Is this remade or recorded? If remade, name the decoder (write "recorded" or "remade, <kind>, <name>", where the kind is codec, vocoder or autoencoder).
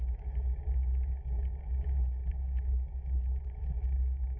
remade, autoencoder, DAC-VAE